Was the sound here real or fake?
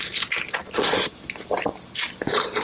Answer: real